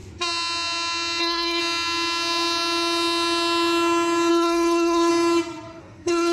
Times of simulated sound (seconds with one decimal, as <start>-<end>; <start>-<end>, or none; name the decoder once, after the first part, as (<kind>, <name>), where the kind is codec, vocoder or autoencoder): 1.2-1.6 (codec, SNAC); 4.3-5.1; 5.8-6.3

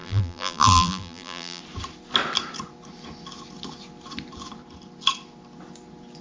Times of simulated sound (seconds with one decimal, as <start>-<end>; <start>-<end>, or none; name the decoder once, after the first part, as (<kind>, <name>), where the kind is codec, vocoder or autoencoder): 0.0-1.6 (vocoder, BigVGAN v2)

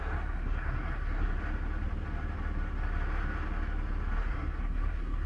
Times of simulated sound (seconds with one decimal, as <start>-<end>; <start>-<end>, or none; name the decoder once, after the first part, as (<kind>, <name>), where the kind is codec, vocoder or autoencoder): 0.0-1.3 (codec, SNAC); 4.2-5.3

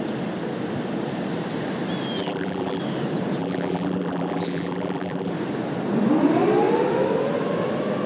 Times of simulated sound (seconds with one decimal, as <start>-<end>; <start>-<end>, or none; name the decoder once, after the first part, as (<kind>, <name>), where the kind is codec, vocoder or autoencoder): 2.2-2.8 (vocoder, BigVGAN v2); 3.4-5.3